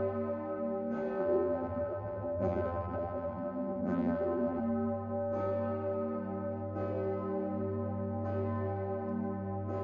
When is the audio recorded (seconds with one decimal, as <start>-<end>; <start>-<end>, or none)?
0.0-1.2; 4.6-9.8